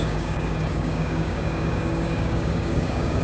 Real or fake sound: fake